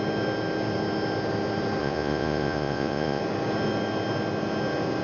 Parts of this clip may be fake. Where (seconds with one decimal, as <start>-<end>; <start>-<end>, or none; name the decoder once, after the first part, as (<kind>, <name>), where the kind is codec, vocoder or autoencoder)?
1.8-3.2 (vocoder, Vocos)